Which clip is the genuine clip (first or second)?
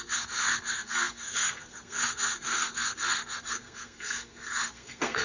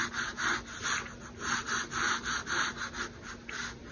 second